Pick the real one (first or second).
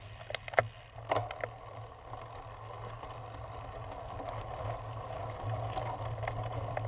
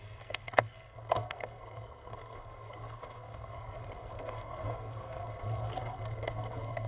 first